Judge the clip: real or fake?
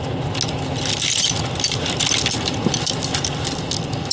real